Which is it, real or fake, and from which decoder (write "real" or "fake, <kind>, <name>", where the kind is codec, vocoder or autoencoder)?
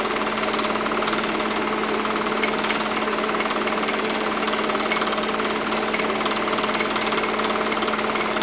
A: real